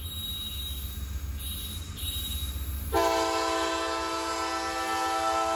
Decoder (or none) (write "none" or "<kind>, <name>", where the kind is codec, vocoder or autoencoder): none